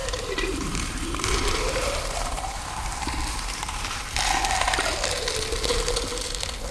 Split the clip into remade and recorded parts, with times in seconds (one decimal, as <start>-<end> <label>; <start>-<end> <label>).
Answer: 0.0-4.0 remade; 4.0-6.7 recorded